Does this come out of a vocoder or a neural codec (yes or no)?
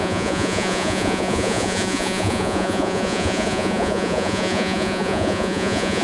yes